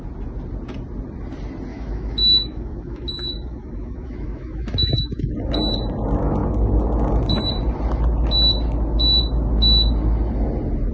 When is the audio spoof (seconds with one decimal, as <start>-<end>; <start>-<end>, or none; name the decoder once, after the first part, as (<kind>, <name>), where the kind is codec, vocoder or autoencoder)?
1.7-5.5 (autoencoder, DAC-VAE)